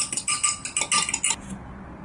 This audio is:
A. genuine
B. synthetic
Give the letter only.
A